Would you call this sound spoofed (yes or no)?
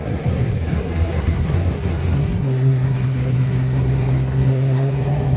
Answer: yes